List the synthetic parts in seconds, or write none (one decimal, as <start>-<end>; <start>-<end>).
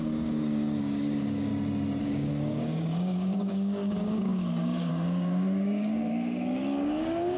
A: 0.0-1.5; 2.0-7.4